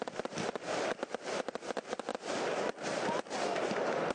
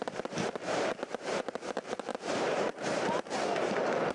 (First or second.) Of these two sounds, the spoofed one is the second